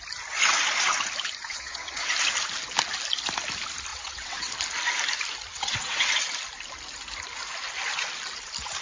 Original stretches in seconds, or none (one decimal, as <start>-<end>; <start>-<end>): 0.0-1.4; 2.1-3.9; 4.5-5.5; 6.1-8.8